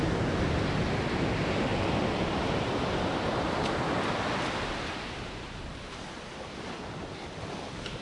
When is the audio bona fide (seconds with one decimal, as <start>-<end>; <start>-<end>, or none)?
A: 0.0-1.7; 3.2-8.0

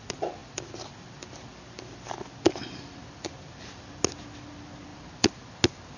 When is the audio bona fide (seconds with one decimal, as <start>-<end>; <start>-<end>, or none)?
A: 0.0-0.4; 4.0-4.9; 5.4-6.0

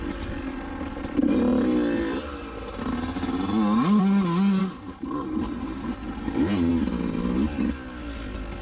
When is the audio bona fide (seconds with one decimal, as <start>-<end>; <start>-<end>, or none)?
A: 0.0-4.6; 6.7-8.6

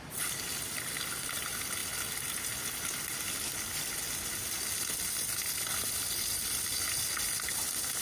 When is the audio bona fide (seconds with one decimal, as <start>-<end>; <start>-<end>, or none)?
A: 0.0-8.0

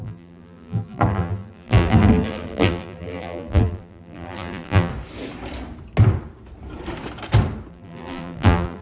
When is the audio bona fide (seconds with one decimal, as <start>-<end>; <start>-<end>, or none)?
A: 4.9-7.7

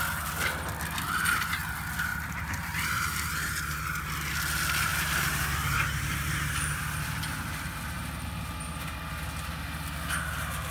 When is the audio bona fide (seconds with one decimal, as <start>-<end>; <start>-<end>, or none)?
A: 0.0-2.1; 3.8-4.9; 6.8-10.7